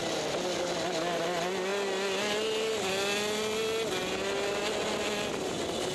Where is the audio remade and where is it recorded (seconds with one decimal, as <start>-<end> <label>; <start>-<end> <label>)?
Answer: 0.0-5.9 recorded